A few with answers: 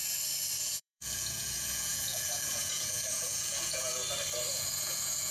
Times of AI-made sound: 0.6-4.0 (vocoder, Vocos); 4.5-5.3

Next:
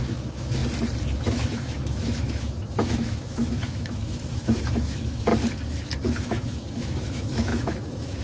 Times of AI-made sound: 0.0-0.6 (autoencoder, DAC-VAE); 1.2-5.3; 6.2-8.2